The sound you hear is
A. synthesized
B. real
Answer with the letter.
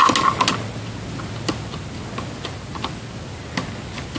B